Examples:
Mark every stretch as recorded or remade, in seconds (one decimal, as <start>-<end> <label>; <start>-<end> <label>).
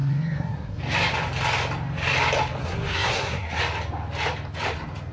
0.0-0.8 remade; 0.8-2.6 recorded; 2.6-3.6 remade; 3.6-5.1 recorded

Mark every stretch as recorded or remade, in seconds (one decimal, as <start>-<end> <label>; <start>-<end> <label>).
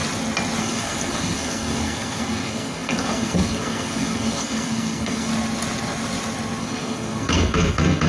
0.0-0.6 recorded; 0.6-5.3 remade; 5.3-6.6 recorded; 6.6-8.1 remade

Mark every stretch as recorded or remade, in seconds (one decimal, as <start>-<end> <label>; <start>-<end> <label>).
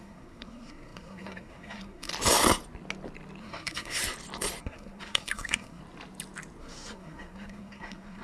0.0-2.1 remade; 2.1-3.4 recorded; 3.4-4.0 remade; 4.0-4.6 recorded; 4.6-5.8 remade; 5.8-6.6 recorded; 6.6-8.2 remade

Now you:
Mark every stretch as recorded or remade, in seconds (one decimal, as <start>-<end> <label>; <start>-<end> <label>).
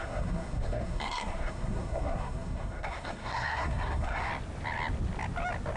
0.0-4.3 remade; 4.3-5.8 recorded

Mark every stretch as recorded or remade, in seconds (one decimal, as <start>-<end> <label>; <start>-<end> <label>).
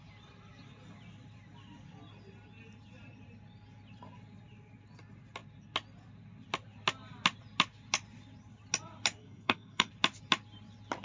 0.0-9.2 recorded; 9.2-9.9 remade; 9.9-11.0 recorded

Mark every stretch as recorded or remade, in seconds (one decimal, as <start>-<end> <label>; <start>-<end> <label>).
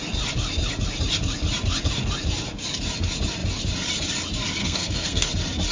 0.0-4.6 recorded; 4.6-5.3 remade; 5.3-5.7 recorded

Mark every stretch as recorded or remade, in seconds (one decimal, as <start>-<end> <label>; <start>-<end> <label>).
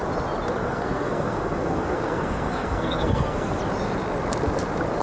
0.0-0.6 recorded; 0.6-3.6 remade; 3.6-5.0 recorded